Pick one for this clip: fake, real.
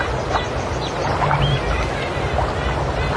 real